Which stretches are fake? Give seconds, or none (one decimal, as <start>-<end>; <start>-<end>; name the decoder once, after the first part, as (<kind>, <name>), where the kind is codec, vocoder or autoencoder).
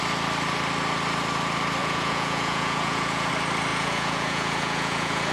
1.8-3.3 (vocoder, Vocos); 3.7-5.3